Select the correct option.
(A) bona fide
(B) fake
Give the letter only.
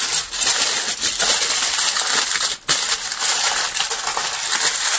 A